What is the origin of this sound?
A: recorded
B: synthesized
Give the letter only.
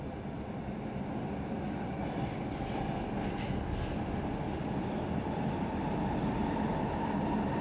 A